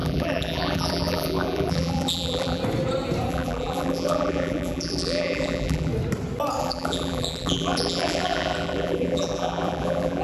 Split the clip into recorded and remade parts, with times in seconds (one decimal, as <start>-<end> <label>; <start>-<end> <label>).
0.0-2.6 remade; 2.6-3.3 recorded; 3.3-5.9 remade; 5.9-6.6 recorded; 6.6-10.2 remade